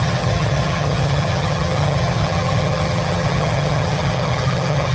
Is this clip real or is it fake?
fake